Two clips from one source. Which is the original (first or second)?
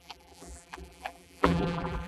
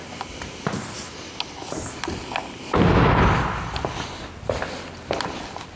second